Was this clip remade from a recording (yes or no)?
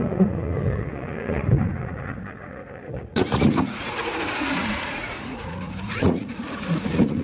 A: yes